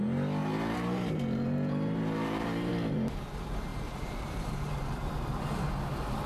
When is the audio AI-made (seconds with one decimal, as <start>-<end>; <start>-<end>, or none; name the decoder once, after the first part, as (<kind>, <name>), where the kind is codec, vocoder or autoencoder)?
0.4-2.7 (vocoder, BigVGAN v2); 3.7-5.1